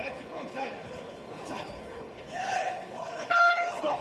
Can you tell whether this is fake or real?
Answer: fake